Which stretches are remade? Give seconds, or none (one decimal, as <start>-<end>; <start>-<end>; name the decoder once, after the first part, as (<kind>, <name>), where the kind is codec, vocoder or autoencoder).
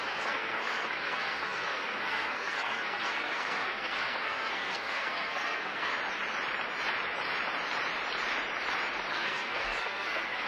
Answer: 0.0-5.9 (codec, SNAC); 9.1-10.5